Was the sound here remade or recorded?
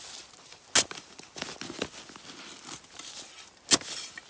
recorded